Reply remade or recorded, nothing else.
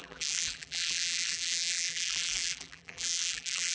remade